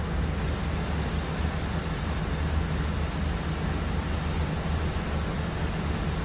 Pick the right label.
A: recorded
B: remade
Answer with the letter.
A